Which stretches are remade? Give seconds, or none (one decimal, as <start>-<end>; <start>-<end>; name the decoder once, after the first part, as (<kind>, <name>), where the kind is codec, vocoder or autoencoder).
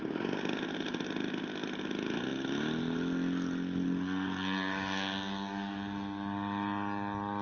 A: none